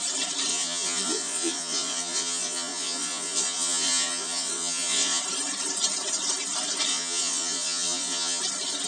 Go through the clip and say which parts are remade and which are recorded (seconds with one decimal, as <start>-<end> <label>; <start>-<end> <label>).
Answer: 0.0-0.5 recorded; 0.5-5.2 remade; 5.2-6.9 recorded; 6.9-8.4 remade; 8.4-8.9 recorded